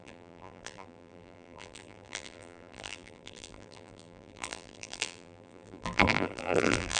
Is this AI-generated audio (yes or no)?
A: yes